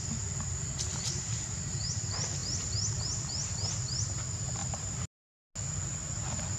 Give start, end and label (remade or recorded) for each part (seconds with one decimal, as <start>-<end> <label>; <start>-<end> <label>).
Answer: 0.0-6.6 recorded